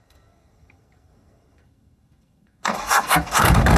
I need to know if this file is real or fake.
fake